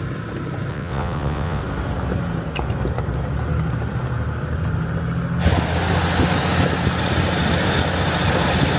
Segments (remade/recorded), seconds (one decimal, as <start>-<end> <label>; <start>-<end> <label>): 0.0-0.7 recorded; 0.7-1.6 remade; 1.6-8.8 recorded